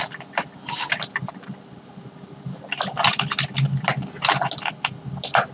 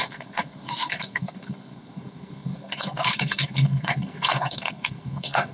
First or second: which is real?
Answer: first